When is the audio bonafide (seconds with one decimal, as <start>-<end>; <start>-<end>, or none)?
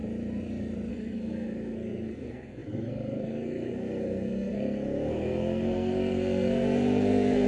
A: 0.0-0.9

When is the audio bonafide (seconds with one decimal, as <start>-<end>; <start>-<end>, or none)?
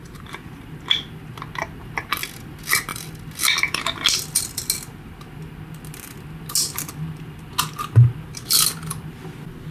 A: 0.0-9.7